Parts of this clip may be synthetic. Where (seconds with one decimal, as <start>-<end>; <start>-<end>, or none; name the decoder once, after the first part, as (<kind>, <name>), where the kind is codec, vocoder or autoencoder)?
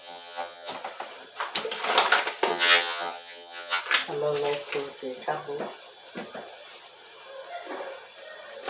0.0-0.7 (vocoder, HiFi-GAN); 2.5-3.8